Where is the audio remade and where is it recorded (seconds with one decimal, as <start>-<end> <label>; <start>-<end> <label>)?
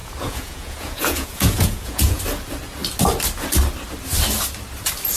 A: 0.0-2.2 remade; 2.2-5.2 recorded